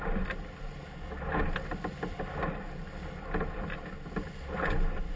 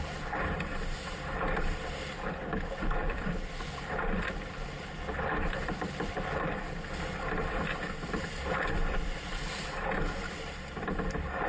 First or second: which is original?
first